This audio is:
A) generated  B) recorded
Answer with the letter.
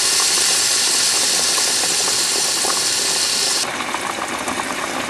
B